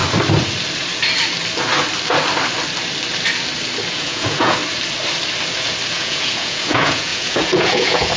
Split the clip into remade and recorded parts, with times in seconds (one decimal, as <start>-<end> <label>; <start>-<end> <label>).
0.0-3.9 recorded; 3.9-4.6 remade; 4.6-5.9 recorded; 5.9-8.2 remade